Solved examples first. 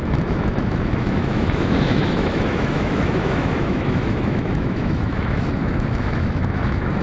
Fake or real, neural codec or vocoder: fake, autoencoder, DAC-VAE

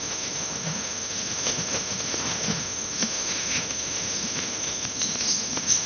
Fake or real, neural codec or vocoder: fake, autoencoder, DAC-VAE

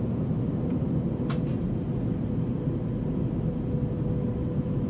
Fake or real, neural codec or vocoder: real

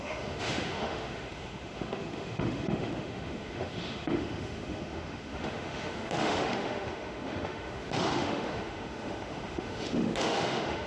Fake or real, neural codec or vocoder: fake, autoencoder, DAC-VAE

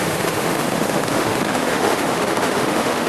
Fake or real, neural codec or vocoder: fake, autoencoder, DAC-VAE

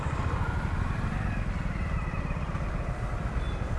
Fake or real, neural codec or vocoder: real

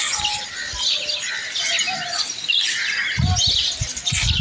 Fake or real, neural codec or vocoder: real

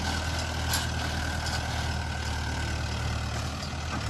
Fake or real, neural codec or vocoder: real